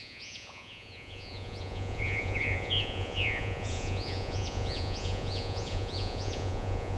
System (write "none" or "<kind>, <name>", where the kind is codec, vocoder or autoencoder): vocoder, Vocos